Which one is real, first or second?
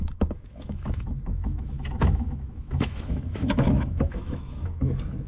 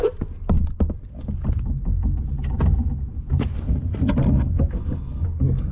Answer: second